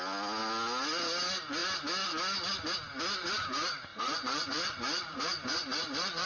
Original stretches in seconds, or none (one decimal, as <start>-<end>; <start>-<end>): 0.0-3.9